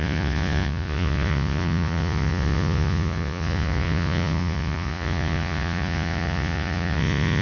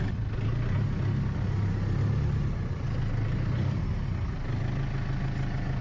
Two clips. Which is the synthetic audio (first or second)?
first